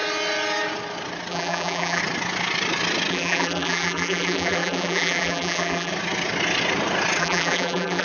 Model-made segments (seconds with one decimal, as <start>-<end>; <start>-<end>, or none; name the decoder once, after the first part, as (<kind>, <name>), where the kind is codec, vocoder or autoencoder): 1.3-2.0 (vocoder, BigVGAN v2); 3.1-5.9; 7.2-8.0